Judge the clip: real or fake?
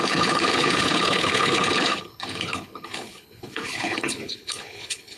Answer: fake